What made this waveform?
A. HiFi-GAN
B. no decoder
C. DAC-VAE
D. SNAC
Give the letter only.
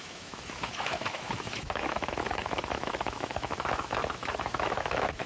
C